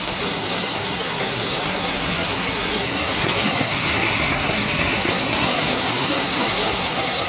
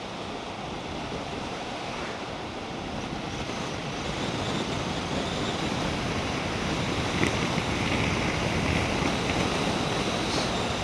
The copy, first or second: first